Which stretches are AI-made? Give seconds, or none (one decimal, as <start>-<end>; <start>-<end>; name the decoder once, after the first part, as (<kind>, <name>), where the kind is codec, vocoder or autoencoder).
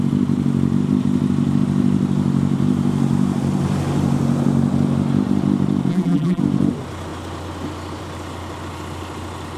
5.9-6.4 (vocoder, BigVGAN v2)